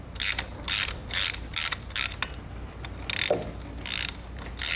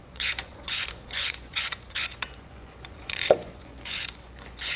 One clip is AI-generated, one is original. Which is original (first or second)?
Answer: first